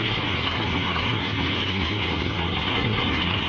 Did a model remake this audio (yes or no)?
yes